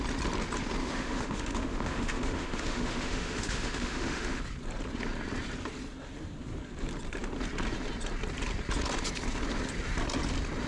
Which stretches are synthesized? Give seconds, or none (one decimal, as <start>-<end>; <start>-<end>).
0.8-4.4